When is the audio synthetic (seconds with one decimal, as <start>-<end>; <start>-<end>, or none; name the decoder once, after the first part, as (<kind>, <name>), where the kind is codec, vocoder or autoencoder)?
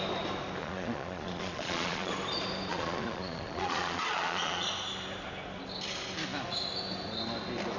0.6-2.1 (vocoder, Vocos); 2.7-4.7